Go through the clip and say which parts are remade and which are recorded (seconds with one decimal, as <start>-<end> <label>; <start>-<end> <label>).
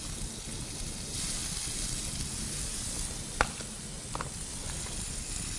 0.0-5.6 recorded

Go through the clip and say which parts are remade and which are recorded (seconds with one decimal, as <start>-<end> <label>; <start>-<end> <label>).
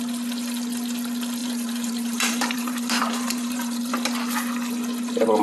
0.0-1.4 recorded; 1.4-3.9 remade; 3.9-5.4 recorded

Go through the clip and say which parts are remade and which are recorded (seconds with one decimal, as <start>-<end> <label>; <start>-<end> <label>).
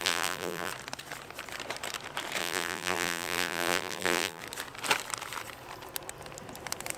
0.0-0.7 remade; 0.7-2.4 recorded; 2.4-4.4 remade; 4.4-7.0 recorded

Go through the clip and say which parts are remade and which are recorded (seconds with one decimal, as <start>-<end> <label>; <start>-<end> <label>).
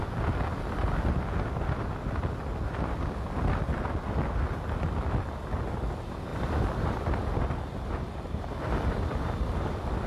0.0-6.3 recorded; 6.3-10.1 remade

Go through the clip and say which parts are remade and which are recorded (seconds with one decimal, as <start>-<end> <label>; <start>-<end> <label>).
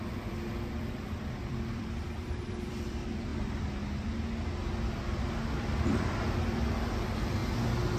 0.0-3.3 remade; 3.3-5.9 recorded; 5.9-7.4 remade; 7.4-8.0 recorded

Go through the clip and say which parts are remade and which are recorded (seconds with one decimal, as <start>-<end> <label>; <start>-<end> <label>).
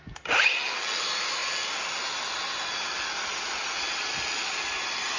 0.0-5.2 recorded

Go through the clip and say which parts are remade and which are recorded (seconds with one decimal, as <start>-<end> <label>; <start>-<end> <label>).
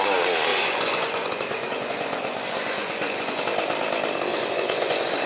0.0-0.5 recorded; 0.5-3.4 remade; 3.4-4.3 recorded; 4.3-5.3 remade